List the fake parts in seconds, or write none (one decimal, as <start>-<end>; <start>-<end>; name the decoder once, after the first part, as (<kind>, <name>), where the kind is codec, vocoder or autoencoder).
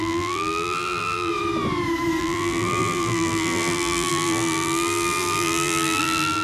0.0-1.3 (vocoder, BigVGAN v2); 2.2-6.4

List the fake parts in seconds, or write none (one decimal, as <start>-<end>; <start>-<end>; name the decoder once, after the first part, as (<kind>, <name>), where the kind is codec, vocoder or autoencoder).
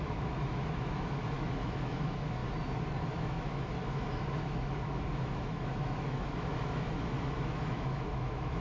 0.0-2.4 (autoencoder, DAC-VAE); 3.0-8.6